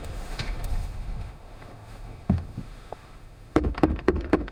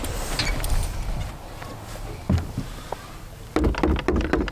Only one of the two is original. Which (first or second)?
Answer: second